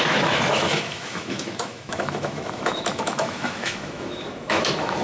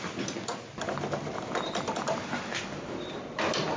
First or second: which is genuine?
second